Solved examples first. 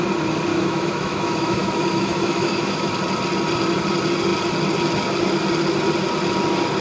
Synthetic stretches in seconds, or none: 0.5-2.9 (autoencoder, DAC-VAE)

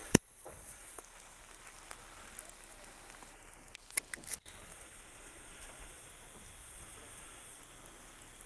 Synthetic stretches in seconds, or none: 0.0-1.0 (vocoder, Vocos); 4.7-6.1; 6.6-7.6

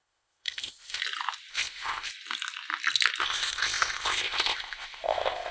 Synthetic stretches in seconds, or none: 0.0-1.0 (codec, ZipCodec); 1.5-2.1; 3.2-5.5

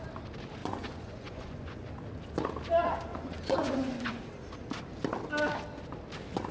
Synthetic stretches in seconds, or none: 0.6-1.9 (vocoder, Vocos); 3.1-4.2

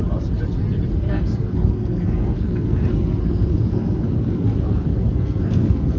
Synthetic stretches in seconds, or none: 0.9-6.0 (codec, SNAC)

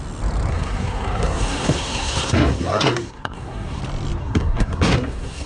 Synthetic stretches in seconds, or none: 0.5-3.8 (codec, SNAC); 4.2-5.5